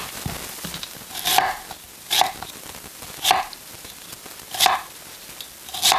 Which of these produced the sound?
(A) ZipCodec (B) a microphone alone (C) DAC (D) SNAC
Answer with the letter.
B